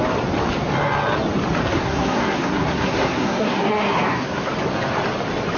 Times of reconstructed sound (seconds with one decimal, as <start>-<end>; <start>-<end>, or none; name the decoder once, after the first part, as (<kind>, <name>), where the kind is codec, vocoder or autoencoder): 1.6-4.5 (codec, SNAC)